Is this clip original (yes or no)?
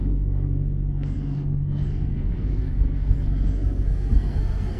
no